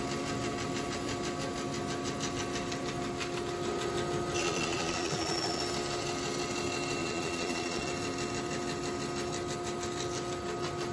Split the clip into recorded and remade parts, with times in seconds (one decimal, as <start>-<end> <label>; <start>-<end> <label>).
0.0-4.4 recorded; 4.4-5.6 remade; 5.6-7.0 recorded; 7.0-7.9 remade; 7.9-10.9 recorded